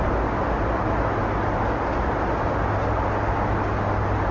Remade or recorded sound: recorded